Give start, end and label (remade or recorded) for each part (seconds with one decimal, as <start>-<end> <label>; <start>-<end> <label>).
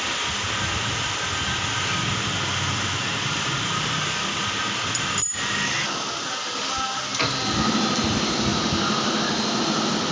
0.0-10.1 recorded